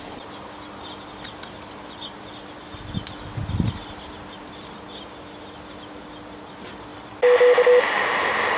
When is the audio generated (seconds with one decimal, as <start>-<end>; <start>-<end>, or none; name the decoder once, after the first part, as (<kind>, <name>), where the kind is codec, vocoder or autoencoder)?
none